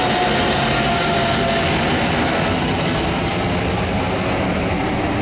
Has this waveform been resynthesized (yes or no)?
no